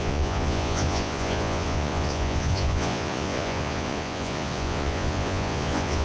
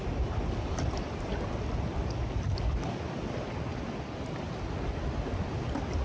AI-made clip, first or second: first